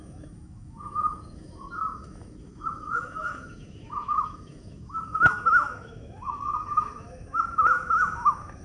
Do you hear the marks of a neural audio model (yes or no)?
yes